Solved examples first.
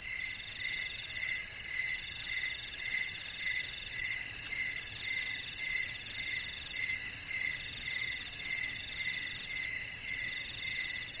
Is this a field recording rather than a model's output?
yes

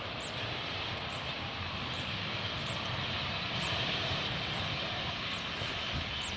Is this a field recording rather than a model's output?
yes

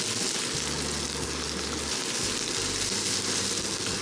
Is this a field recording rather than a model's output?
yes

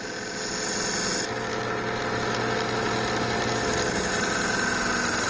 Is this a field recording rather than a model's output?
yes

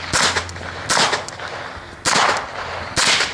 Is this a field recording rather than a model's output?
yes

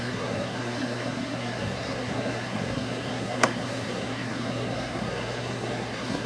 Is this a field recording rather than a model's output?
no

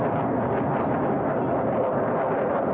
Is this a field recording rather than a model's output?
yes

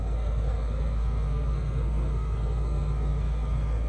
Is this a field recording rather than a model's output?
no